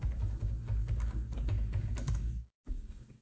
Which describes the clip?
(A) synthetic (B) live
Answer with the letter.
A